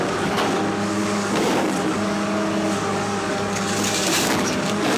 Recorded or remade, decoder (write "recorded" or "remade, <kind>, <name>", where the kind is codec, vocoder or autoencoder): remade, codec, DAC